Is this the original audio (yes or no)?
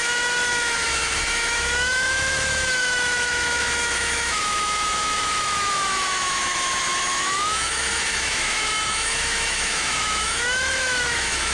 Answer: no